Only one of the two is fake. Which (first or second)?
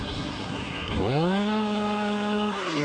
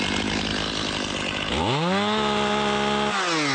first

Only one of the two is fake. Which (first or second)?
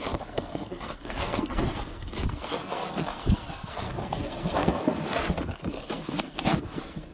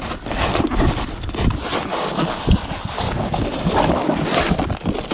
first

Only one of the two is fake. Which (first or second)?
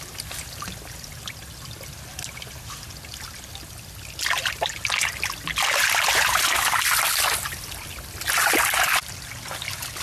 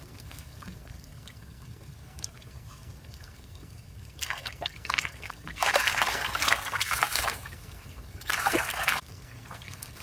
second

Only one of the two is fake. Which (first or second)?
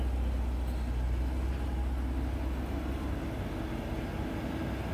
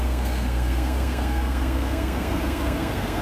second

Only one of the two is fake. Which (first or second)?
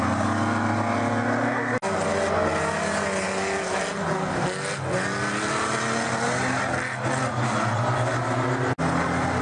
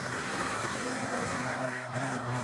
second